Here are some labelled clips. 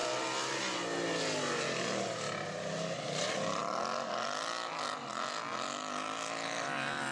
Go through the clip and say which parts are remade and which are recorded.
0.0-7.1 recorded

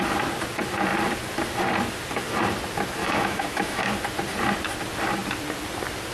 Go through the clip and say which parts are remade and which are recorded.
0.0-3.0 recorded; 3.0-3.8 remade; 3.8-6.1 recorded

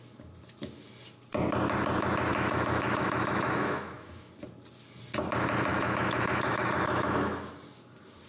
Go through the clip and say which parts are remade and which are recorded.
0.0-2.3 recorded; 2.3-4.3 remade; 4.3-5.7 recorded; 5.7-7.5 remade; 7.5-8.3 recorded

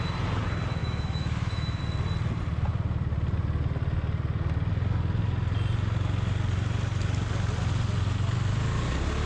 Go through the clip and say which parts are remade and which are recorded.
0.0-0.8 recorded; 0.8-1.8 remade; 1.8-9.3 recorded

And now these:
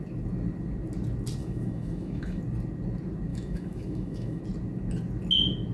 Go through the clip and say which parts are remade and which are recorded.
0.0-1.4 recorded; 1.4-2.4 remade; 2.4-3.3 recorded; 3.3-4.4 remade; 4.4-5.7 recorded